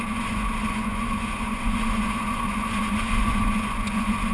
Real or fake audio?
fake